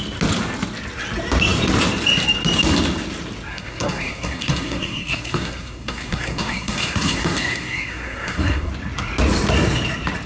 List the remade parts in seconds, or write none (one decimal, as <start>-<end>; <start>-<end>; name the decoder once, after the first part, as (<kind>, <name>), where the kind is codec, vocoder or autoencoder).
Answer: 3.5-8.7 (codec, SNAC)